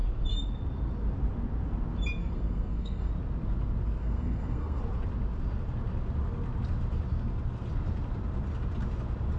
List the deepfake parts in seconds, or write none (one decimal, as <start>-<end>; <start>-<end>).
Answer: 2.2-3.1; 4.0-4.8